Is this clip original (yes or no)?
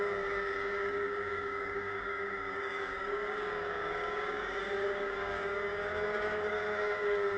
no